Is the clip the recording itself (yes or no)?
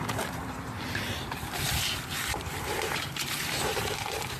no